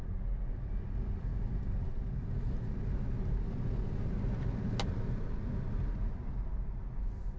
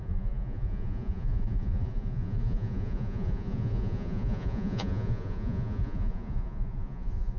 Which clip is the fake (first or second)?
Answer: second